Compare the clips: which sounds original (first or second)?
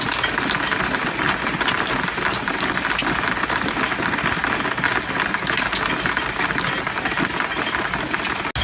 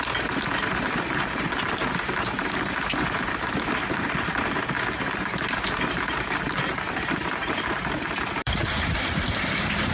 first